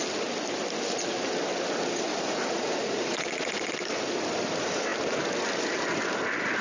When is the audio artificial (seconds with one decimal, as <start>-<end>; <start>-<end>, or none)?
2.1-3.7